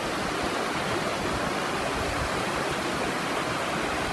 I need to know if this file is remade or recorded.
recorded